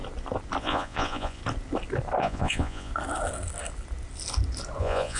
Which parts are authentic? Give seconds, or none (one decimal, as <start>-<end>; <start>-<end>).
0.0-0.6; 1.4-2.2; 2.9-4.8